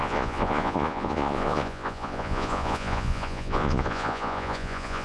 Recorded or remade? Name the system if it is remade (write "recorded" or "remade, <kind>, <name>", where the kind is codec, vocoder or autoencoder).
remade, vocoder, Vocos